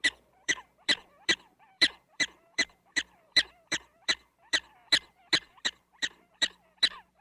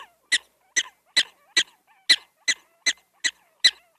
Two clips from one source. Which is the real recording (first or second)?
second